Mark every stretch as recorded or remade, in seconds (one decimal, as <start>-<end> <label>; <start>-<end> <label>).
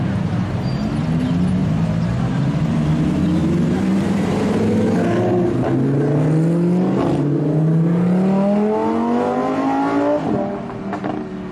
0.0-3.4 recorded; 3.4-4.4 remade; 4.4-11.5 recorded